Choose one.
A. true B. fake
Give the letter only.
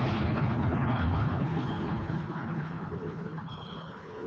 B